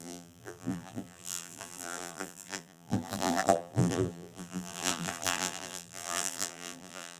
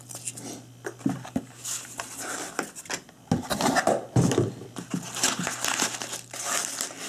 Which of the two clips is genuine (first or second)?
second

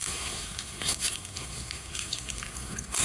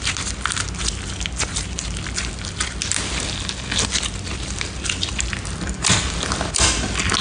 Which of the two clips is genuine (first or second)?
second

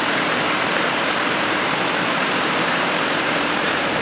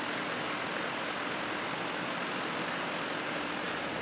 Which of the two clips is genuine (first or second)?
second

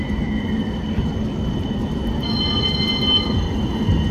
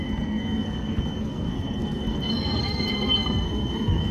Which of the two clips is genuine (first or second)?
first